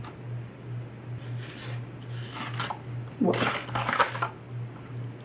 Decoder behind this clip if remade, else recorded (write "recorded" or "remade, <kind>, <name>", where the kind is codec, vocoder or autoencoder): recorded